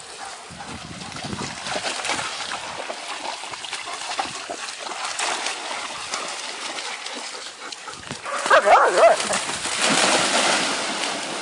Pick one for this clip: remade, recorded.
recorded